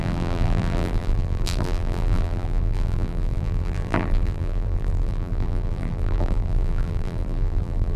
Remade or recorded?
remade